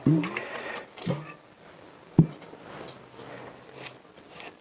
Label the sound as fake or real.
real